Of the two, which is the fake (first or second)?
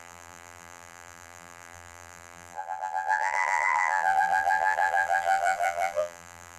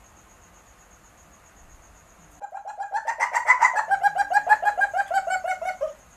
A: first